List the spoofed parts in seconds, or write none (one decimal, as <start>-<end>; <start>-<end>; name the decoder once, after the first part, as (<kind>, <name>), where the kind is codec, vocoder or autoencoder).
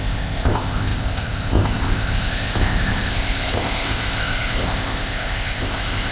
0.0-6.1 (codec, ZipCodec)